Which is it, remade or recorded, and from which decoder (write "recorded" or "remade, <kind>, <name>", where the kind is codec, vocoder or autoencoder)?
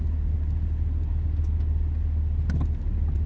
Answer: recorded